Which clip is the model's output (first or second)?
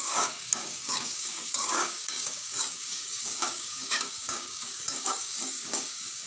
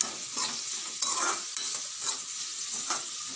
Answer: first